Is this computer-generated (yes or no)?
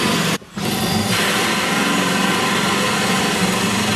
yes